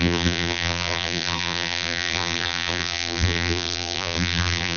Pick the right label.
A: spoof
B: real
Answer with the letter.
A